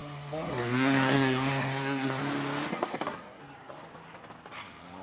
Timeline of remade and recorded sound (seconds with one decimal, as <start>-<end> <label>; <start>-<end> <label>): 0.0-2.2 remade; 2.2-2.7 recorded; 2.7-3.4 remade; 3.4-5.0 recorded